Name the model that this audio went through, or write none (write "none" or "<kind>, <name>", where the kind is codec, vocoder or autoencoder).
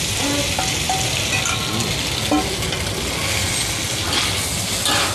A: none